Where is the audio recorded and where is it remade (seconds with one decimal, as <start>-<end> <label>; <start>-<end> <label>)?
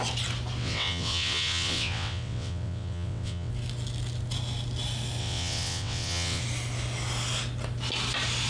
0.0-0.6 recorded; 0.6-3.5 remade; 3.5-5.2 recorded; 5.2-6.4 remade; 6.4-8.5 recorded